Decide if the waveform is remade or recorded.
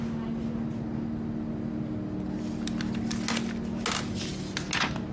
recorded